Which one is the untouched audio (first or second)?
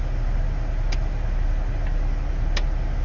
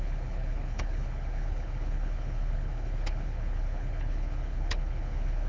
first